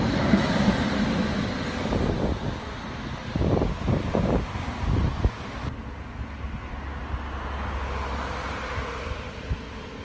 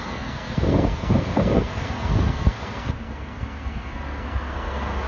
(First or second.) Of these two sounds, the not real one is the second